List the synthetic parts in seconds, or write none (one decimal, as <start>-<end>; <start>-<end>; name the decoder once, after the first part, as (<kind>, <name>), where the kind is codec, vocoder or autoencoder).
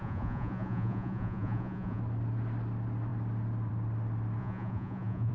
0.0-2.0 (vocoder, Vocos); 4.4-5.3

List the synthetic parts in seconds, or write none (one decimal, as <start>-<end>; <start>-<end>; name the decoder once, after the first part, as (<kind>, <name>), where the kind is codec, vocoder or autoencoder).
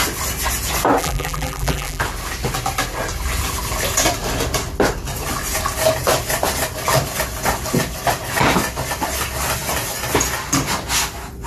1.0-2.0 (vocoder, BigVGAN v2)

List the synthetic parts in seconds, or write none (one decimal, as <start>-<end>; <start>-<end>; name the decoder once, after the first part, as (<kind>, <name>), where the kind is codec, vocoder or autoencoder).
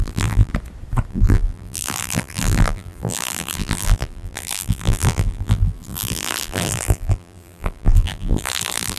0.0-0.5 (vocoder, BigVGAN v2); 1.1-9.0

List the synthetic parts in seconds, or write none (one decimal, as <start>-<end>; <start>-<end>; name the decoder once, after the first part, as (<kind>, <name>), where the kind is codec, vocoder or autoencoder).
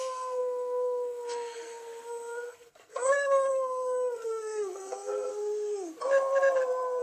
0.0-5.3 (codec, SNAC)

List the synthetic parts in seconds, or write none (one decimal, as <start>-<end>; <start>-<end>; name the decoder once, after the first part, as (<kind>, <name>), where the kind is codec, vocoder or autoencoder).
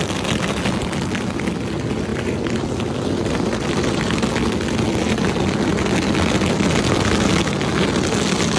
none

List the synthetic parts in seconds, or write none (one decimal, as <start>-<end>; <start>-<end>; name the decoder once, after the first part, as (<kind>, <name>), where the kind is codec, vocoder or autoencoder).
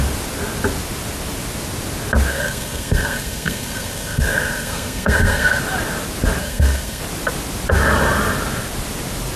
2.3-5.6 (codec, SNAC); 6.4-7.0